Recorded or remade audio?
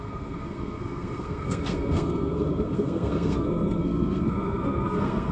remade